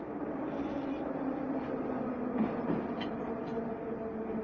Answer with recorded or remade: recorded